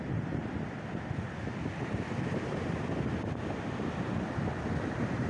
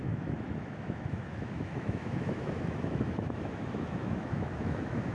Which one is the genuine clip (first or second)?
first